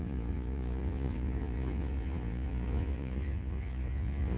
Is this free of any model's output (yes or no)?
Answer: no